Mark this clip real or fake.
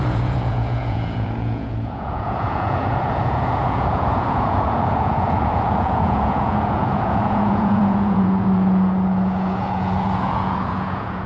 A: fake